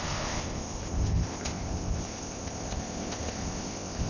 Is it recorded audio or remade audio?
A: remade